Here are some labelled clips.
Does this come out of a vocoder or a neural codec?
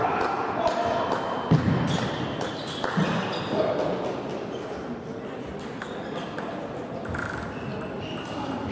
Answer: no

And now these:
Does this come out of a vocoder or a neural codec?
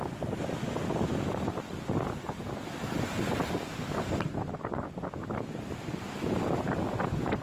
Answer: no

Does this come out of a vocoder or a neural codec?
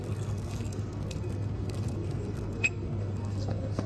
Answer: yes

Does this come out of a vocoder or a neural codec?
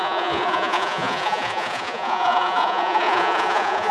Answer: yes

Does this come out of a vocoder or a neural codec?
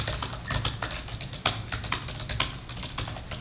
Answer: no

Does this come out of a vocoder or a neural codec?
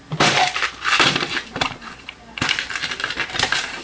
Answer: yes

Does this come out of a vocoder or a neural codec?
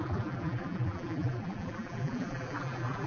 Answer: yes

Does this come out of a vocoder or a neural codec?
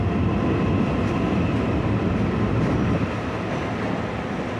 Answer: no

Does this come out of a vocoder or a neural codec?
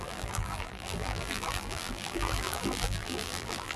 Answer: yes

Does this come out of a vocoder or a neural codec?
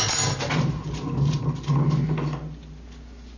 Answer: no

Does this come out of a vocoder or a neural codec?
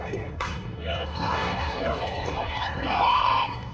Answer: yes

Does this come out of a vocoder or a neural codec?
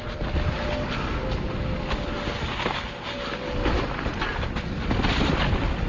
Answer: no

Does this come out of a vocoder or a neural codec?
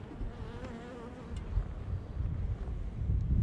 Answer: yes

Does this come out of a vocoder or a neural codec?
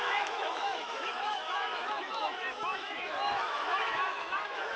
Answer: yes